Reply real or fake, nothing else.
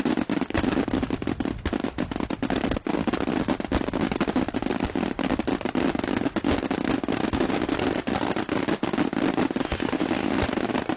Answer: real